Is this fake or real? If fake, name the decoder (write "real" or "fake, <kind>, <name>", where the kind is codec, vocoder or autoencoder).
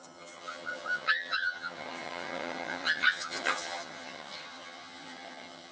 fake, vocoder, HiFi-GAN